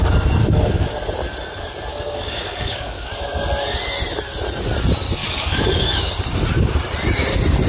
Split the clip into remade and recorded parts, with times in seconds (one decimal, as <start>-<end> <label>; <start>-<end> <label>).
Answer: 0.0-0.4 recorded; 0.4-0.9 remade; 0.9-1.9 recorded; 1.9-3.1 remade; 3.1-5.2 recorded; 5.2-6.1 remade; 6.1-7.7 recorded